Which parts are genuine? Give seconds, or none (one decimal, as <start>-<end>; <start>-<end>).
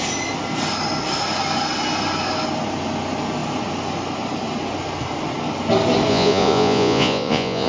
0.0-6.1